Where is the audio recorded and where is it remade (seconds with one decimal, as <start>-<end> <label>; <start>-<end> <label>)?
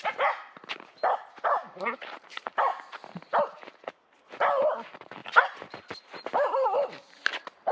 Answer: 0.0-2.7 remade; 2.7-3.4 recorded; 3.4-7.7 remade